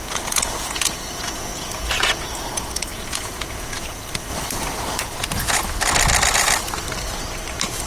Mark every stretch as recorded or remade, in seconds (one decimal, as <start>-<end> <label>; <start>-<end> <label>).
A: 0.0-4.3 remade; 4.3-5.0 recorded; 5.0-5.6 remade; 5.6-7.9 recorded